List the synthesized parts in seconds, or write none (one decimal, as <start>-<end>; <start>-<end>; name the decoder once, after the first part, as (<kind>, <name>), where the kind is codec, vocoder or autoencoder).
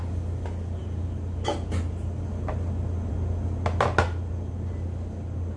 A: none